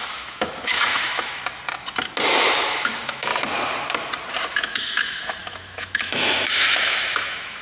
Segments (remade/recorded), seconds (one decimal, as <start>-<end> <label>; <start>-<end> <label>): 0.0-1.4 remade; 1.4-2.5 recorded; 2.5-3.3 remade; 3.3-4.5 recorded; 4.5-7.6 remade